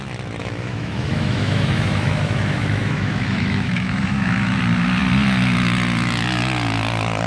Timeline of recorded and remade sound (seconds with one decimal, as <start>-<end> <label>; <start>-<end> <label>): 0.0-0.4 recorded; 0.4-4.6 remade; 4.6-7.3 recorded